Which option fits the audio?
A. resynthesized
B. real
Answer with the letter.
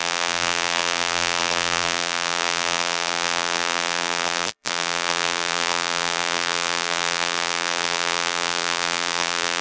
A